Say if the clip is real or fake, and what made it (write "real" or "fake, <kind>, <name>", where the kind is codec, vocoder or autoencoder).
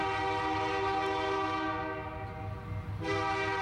real